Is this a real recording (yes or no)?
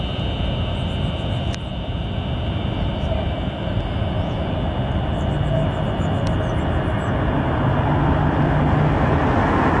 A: yes